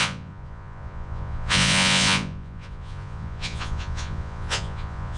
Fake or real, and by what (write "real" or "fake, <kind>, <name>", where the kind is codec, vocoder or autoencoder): fake, vocoder, Vocos